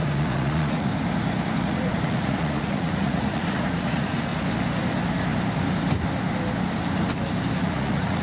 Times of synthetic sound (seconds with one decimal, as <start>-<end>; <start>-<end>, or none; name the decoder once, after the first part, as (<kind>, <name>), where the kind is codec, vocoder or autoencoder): 0.0-0.9 (vocoder, Vocos); 1.6-4.3; 7.6-8.2

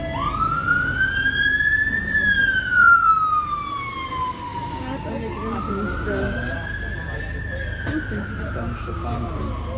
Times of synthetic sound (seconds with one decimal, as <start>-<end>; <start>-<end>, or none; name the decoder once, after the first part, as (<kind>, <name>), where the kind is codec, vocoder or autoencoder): 0.7-3.1 (vocoder, Vocos)

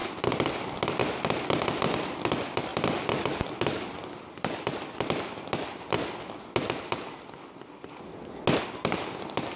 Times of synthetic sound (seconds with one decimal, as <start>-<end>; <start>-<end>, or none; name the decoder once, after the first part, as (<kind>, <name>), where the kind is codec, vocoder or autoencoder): none